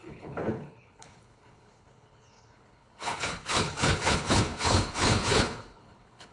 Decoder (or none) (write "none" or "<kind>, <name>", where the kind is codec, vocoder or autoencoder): codec, HILCodec